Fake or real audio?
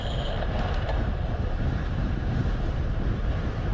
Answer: fake